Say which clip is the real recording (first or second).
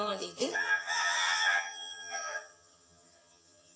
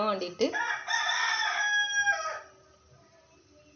second